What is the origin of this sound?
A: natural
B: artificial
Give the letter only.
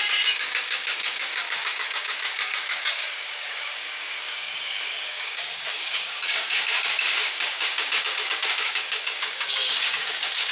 B